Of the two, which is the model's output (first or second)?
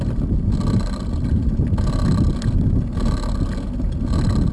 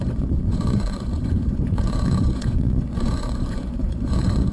second